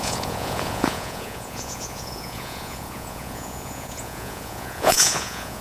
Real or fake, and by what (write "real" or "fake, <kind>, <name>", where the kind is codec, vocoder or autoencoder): fake, vocoder, Vocos